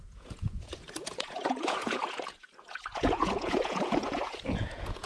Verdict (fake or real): fake